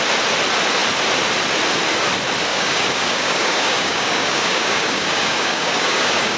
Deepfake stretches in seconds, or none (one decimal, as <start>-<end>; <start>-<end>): 2.5-6.4